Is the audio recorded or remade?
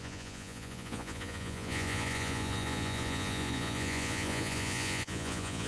remade